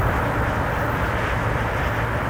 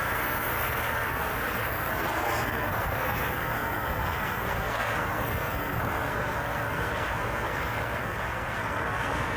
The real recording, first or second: first